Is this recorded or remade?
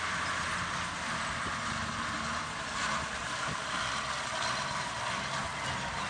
recorded